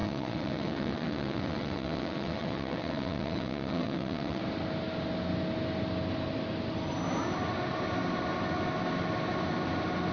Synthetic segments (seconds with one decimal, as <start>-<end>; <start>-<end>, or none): 0.0-4.4